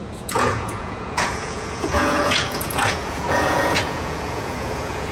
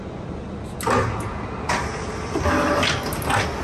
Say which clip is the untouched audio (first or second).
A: second